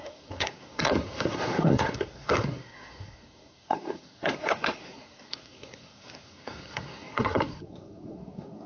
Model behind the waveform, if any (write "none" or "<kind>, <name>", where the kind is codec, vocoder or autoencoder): codec, SNAC